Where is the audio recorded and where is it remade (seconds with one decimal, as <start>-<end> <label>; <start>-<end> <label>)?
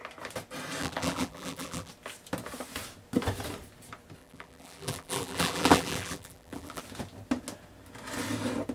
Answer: 0.0-0.8 recorded; 0.8-1.9 remade; 1.9-4.2 recorded; 4.2-6.8 remade; 6.8-8.7 recorded